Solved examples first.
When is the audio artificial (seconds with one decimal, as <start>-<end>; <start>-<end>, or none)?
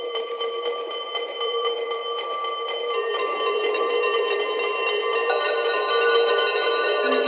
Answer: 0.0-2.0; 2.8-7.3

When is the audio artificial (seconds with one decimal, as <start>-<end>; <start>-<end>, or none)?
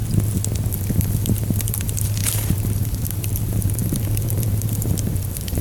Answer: 0.7-5.6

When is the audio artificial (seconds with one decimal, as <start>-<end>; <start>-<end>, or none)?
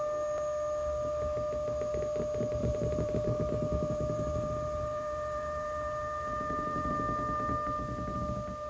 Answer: 2.6-6.9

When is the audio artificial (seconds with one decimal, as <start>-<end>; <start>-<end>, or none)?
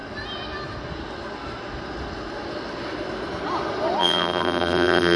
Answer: 4.0-5.2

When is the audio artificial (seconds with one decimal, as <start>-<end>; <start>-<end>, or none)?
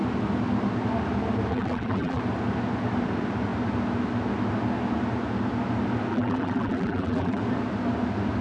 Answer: 1.5-2.2; 6.1-7.4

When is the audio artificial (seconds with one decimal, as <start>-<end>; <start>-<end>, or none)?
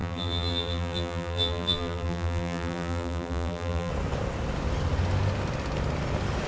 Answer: 0.0-3.9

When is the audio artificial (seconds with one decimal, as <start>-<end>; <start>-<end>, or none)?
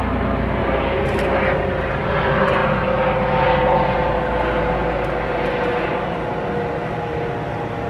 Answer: 0.6-1.9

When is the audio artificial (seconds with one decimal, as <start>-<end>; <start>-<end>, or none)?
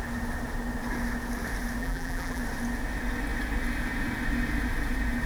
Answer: 1.8-2.4